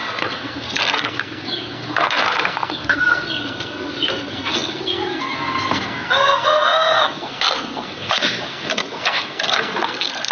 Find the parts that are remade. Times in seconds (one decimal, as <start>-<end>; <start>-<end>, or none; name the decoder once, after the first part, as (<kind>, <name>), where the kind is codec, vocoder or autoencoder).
0.0-10.3 (codec, SNAC)